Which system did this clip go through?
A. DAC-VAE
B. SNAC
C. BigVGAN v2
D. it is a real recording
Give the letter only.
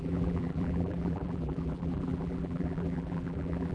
C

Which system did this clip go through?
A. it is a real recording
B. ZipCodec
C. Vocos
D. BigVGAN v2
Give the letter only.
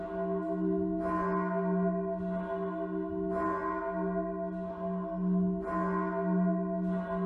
A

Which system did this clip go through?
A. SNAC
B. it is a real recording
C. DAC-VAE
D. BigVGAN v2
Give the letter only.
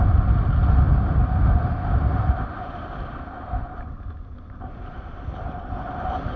B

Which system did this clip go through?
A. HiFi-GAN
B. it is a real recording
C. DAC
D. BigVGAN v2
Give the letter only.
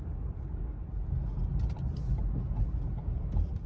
B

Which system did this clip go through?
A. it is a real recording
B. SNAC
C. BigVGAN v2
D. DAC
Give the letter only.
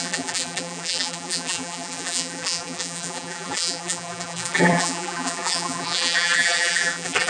C